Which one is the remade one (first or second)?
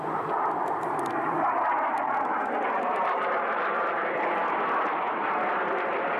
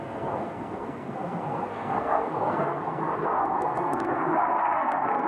second